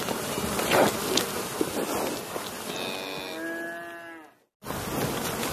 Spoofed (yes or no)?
no